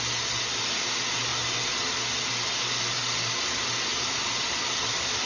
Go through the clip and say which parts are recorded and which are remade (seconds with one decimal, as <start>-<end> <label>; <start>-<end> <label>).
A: 0.0-5.3 recorded